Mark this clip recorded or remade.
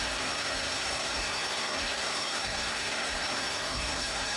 remade